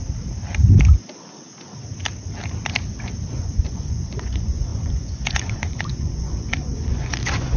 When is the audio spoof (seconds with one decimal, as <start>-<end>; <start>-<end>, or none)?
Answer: 3.3-7.6